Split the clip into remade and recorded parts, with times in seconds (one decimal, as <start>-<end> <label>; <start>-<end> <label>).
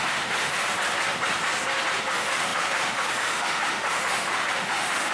0.0-0.6 remade; 0.6-2.0 recorded; 2.0-5.1 remade